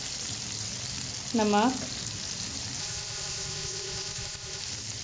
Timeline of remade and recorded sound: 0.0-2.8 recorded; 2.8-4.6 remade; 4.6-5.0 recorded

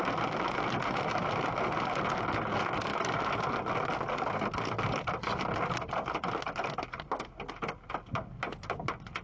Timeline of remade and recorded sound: 0.0-9.2 recorded

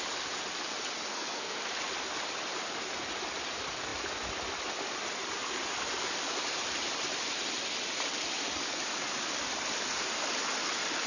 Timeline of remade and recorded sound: 0.0-1.1 recorded; 1.1-1.6 remade; 1.6-11.1 recorded

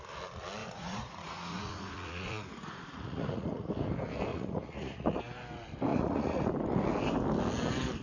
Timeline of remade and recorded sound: 0.0-0.6 recorded; 0.6-3.7 remade; 3.7-4.3 recorded; 4.3-5.2 remade; 5.2-5.9 recorded; 5.9-6.5 remade; 6.5-8.0 recorded

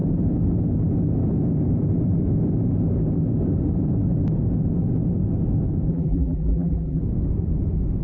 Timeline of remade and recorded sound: 0.0-5.9 recorded; 5.9-7.0 remade; 7.0-8.0 recorded

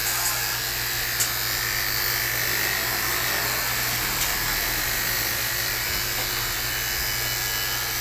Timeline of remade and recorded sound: 0.0-4.3 recorded; 4.3-5.7 remade; 5.7-8.0 recorded

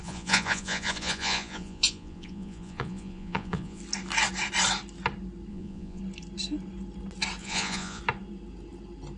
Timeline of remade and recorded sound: 0.0-3.8 remade; 3.8-5.5 recorded; 5.5-6.0 remade; 6.0-7.4 recorded; 7.4-8.0 remade; 8.0-9.2 recorded

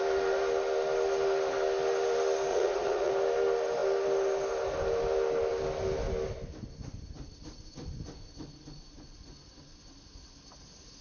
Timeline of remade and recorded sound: 0.0-2.5 recorded; 2.5-3.1 remade; 3.1-11.0 recorded